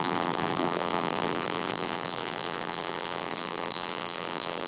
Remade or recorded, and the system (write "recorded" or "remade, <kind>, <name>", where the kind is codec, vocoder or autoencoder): remade, vocoder, BigVGAN v2